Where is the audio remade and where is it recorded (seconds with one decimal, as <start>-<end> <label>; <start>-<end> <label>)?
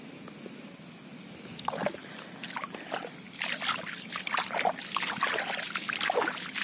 0.0-6.6 recorded